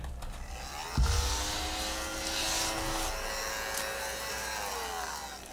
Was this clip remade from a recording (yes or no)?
no